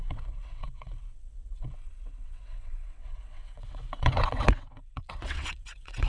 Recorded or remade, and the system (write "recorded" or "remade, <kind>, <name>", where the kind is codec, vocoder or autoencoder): remade, vocoder, WaveNeXt